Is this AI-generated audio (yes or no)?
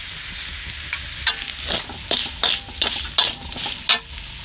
no